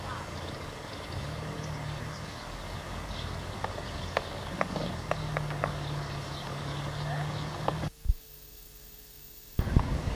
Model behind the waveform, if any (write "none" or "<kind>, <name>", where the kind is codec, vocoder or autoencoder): codec, DAC